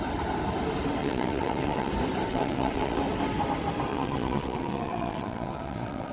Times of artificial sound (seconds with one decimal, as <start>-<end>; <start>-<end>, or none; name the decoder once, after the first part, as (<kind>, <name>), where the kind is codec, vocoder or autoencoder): 1.0-1.9 (vocoder, WaveNeXt); 2.3-3.0; 3.9-6.1